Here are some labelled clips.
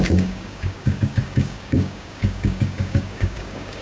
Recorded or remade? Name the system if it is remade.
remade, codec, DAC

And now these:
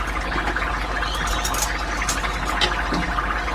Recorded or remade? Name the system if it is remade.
recorded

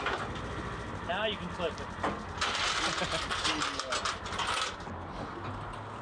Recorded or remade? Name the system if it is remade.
recorded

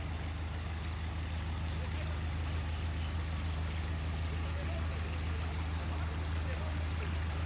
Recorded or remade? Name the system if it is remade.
recorded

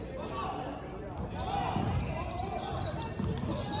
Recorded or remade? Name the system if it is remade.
recorded